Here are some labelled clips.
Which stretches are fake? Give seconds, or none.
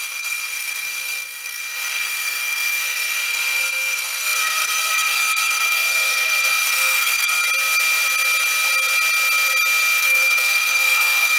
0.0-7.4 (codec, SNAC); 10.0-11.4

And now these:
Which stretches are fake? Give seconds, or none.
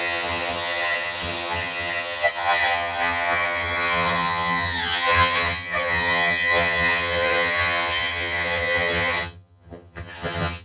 0.0-10.6 (vocoder, HiFi-GAN)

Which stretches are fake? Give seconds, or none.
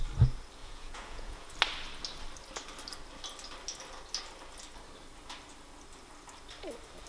0.6-1.5 (vocoder, Vocos)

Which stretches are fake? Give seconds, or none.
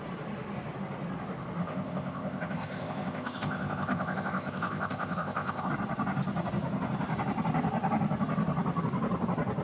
1.6-5.7 (codec, ZipCodec)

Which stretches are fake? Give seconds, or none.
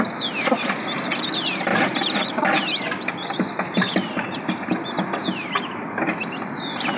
none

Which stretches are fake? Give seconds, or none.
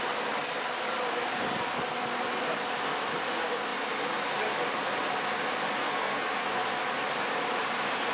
5.8-6.5 (codec, SNAC)